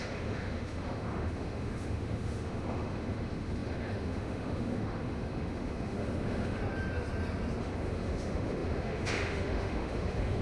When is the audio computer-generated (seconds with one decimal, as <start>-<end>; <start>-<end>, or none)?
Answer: 0.0-6.6; 7.6-10.4